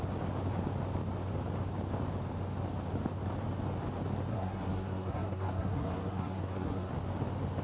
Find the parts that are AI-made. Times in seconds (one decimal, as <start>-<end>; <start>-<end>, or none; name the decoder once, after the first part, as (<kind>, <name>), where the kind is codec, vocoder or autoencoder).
4.3-6.9 (codec, SNAC)